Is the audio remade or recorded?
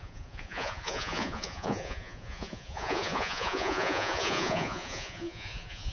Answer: remade